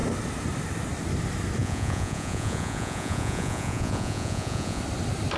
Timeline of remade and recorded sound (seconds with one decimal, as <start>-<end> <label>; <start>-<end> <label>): 0.0-1.6 recorded; 1.6-4.8 remade; 4.8-5.4 recorded